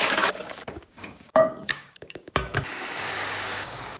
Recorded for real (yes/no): no